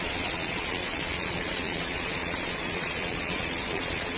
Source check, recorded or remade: remade